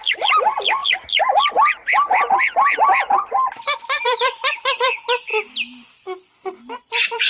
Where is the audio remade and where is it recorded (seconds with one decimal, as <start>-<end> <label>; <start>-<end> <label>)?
0.0-5.3 remade; 5.3-6.6 recorded; 6.6-7.3 remade